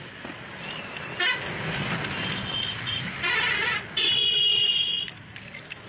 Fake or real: real